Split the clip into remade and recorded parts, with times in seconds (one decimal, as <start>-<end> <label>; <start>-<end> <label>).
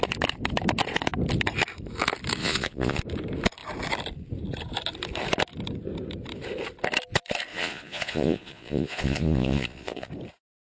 0.0-2.4 recorded; 2.4-3.0 remade; 3.0-7.5 recorded; 7.5-10.1 remade; 10.1-10.7 recorded